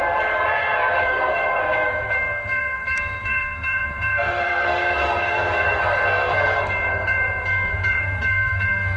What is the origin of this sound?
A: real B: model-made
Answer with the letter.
B